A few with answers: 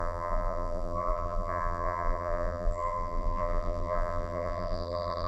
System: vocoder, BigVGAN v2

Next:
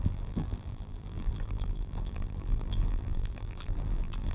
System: vocoder, BigVGAN v2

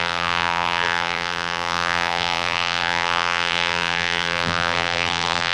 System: vocoder, BigVGAN v2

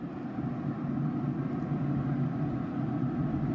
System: none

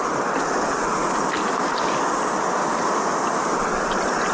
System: none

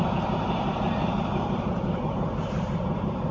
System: vocoder, BigVGAN v2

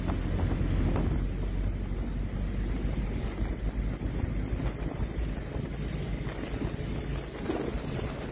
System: none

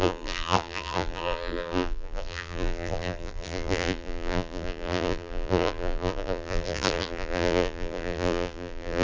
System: vocoder, BigVGAN v2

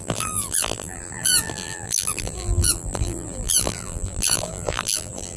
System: vocoder, BigVGAN v2